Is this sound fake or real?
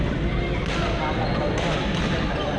real